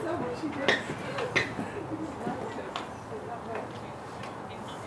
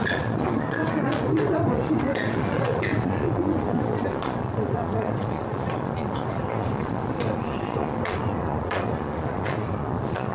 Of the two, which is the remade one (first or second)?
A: second